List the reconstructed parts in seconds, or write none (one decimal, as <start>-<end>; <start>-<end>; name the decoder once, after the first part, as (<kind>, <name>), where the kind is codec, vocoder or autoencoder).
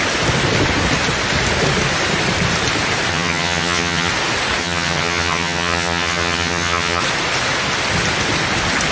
3.1-4.1 (vocoder, HiFi-GAN); 4.6-7.0